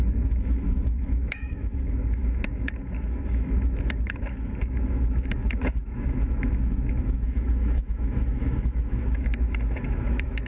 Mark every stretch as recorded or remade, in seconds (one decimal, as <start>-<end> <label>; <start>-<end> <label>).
0.0-10.5 remade